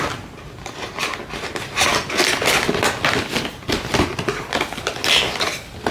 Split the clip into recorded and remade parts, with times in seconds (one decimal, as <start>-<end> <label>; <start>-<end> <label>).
0.0-5.9 recorded